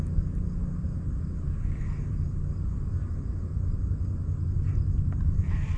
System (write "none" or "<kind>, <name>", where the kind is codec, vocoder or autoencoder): none